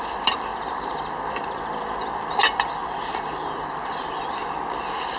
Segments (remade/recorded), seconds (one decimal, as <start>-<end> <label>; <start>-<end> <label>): 0.0-5.2 recorded